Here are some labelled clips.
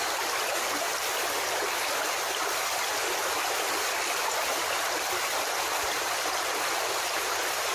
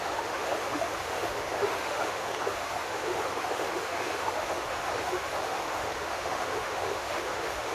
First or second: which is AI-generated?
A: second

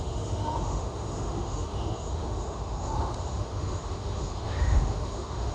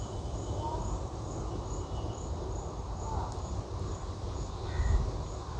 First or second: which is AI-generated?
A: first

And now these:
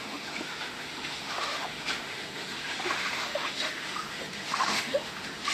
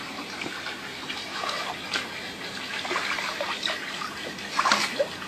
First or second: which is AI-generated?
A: first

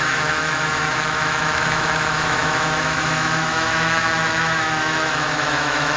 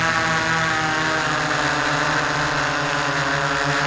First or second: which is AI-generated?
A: first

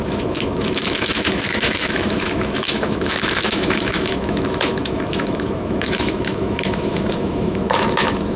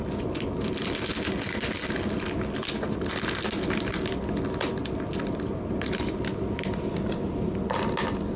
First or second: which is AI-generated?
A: first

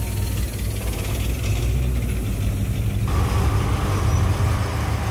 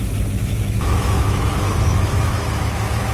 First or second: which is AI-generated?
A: second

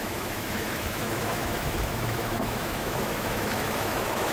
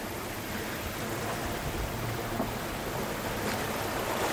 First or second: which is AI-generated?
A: first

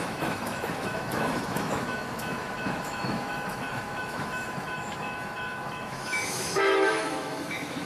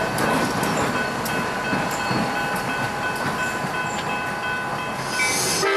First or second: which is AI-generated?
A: first